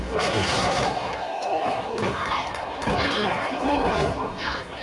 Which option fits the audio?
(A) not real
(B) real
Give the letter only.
A